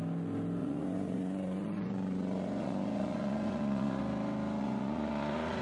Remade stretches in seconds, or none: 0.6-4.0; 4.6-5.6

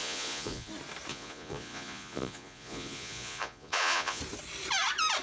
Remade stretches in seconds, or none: 0.0-0.7; 1.1-4.2

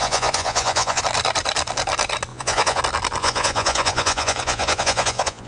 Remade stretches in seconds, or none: 0.0-1.0; 2.3-2.8; 3.2-5.5

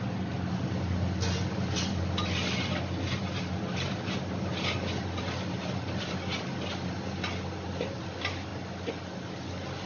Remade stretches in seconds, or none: none